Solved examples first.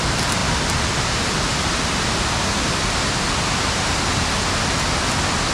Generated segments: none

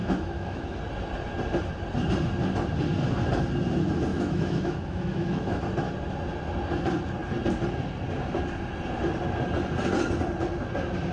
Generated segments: 0.0-0.8 (autoencoder, DAC-VAE); 4.1-5.6

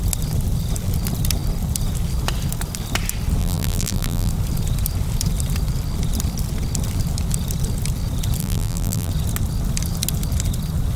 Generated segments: 3.4-4.3 (vocoder, BigVGAN v2); 8.4-9.1

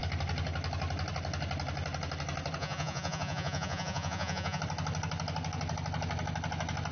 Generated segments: 2.6-4.6 (vocoder, Vocos)